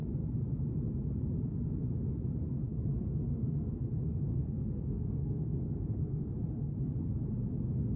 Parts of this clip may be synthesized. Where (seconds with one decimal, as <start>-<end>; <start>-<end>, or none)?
3.3-3.9; 4.3-6.3